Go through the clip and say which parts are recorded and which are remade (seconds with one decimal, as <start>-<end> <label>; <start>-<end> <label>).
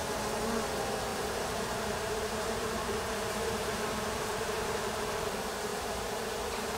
0.0-1.1 recorded; 1.1-5.2 remade; 5.2-5.7 recorded; 5.7-6.8 remade